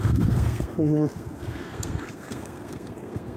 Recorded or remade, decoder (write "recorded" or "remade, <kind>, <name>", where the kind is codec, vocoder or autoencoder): remade, codec, SNAC